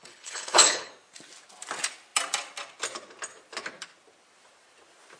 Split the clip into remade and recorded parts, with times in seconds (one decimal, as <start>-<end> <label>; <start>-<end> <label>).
0.0-0.9 remade; 0.9-5.2 recorded